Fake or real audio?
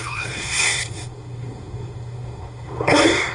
fake